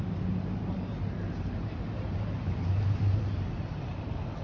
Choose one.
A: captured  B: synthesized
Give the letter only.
B